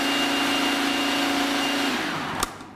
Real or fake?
real